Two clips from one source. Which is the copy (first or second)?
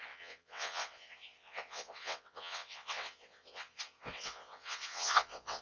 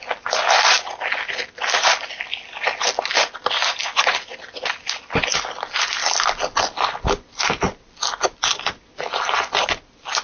first